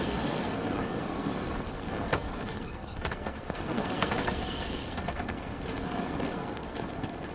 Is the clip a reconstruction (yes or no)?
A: yes